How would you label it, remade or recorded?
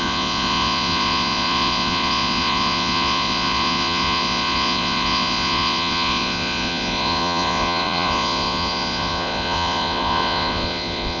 remade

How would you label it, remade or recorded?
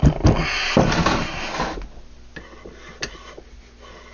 recorded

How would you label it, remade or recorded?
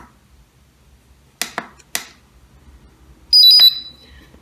recorded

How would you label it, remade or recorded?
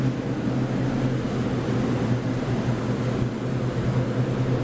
recorded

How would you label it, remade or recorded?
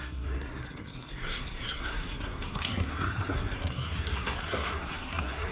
remade